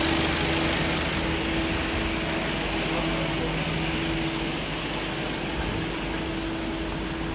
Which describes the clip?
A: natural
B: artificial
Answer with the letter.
A